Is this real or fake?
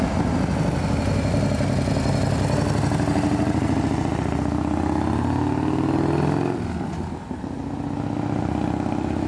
real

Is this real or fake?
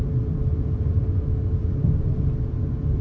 real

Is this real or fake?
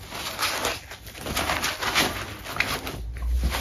real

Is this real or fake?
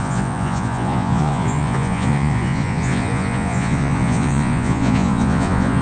fake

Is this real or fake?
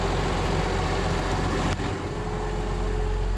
real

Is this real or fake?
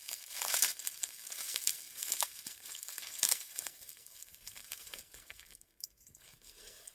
fake